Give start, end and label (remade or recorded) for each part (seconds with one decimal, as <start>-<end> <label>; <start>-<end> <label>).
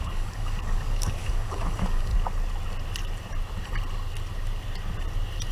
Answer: 0.0-2.1 remade; 2.1-5.5 recorded